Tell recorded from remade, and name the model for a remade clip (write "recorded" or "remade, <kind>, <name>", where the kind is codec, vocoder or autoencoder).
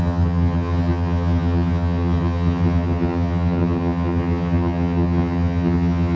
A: remade, vocoder, HiFi-GAN